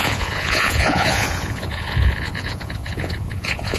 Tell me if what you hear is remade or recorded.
remade